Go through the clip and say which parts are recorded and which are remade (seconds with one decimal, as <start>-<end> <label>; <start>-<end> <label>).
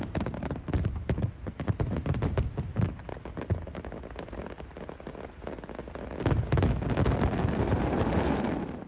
0.0-3.1 remade; 3.1-7.6 recorded; 7.6-8.9 remade